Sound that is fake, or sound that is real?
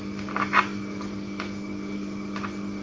real